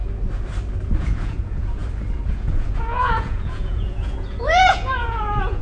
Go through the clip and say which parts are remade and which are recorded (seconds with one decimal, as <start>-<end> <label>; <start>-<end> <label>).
0.0-1.0 recorded; 1.0-1.8 remade; 1.8-2.3 recorded; 2.3-5.6 remade